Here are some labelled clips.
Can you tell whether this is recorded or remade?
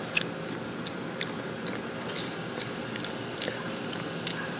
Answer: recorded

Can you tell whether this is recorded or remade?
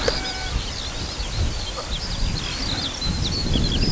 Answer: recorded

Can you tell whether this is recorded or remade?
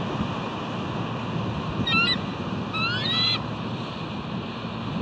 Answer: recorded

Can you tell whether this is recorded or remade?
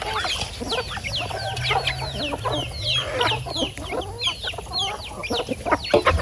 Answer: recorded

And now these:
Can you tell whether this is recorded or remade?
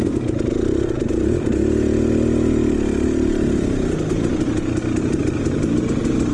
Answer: recorded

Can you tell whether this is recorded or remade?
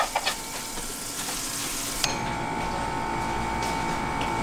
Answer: recorded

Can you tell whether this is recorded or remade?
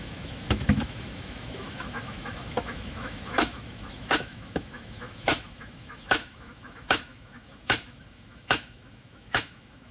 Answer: remade